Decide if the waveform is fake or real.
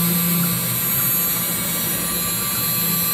real